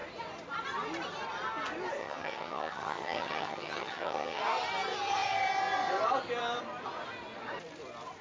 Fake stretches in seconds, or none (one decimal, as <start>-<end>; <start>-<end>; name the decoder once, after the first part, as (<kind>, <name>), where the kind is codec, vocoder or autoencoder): 2.0-4.4 (vocoder, HiFi-GAN)